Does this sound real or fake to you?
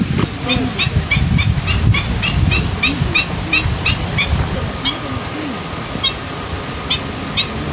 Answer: real